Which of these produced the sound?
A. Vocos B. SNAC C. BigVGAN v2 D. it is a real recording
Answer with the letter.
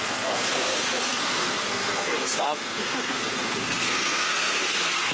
B